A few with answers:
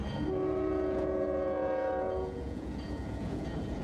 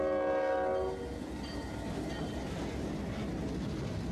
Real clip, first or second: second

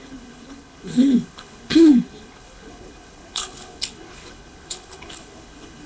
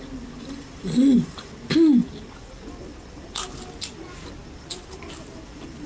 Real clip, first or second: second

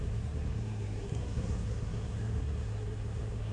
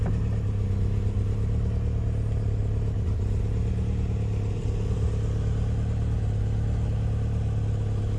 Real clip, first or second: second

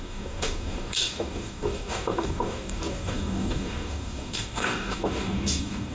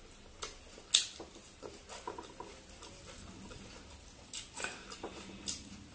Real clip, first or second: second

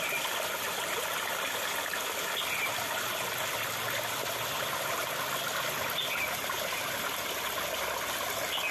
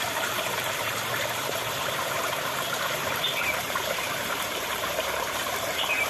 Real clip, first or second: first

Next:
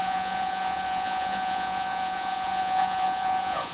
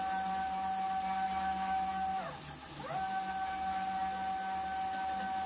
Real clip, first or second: second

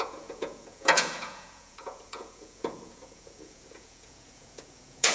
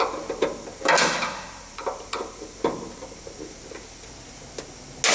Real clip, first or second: second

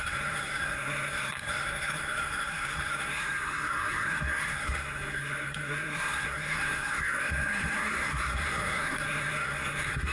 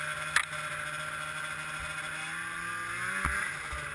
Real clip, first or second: second